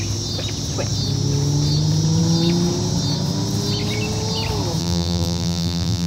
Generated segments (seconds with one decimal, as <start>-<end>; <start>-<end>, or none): 4.8-6.1